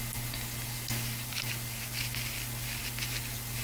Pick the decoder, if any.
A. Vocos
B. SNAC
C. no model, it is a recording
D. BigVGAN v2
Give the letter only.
C